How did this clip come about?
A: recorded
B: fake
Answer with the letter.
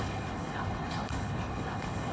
B